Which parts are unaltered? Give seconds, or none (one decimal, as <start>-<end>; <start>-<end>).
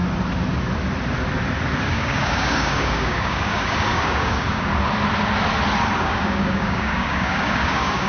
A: 0.0-1.8; 4.7-6.0